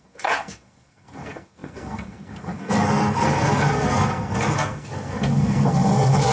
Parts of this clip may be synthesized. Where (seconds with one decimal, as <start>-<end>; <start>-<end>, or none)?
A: 0.0-6.3